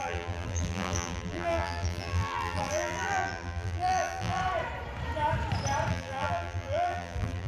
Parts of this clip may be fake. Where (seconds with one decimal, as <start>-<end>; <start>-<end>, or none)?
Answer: 0.0-4.4; 5.9-7.5